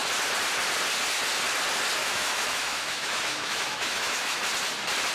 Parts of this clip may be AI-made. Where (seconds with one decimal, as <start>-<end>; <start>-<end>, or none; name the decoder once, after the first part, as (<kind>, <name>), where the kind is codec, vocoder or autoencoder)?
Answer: 2.0-4.4 (autoencoder, DAC-VAE)